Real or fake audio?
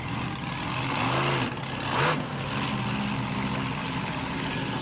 real